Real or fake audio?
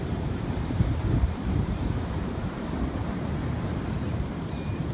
fake